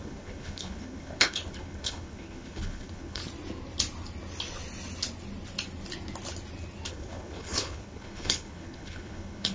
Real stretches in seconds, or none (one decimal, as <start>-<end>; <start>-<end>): 3.2-6.9

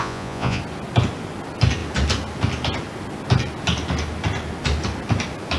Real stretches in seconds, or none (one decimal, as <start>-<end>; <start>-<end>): 0.6-5.6

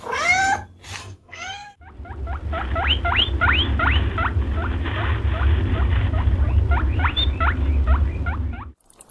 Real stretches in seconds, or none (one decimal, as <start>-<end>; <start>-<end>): 0.0-1.0; 1.8-9.1

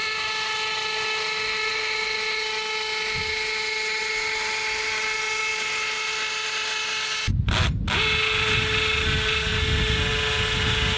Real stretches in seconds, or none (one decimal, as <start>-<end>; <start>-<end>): 0.0-11.0

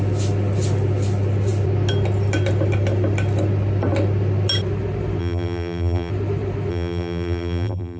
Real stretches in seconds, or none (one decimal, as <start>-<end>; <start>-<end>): 0.0-5.2; 6.1-6.7

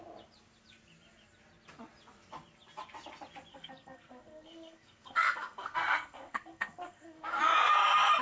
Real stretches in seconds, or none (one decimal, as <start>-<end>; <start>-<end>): 0.0-3.5; 7.4-8.2

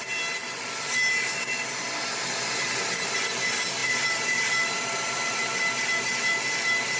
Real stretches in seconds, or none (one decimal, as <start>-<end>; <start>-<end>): 0.0-3.8; 5.4-7.0